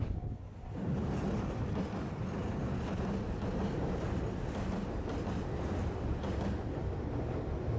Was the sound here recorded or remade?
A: recorded